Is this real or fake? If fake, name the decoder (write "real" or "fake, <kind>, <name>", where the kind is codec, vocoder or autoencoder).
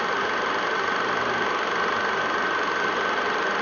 real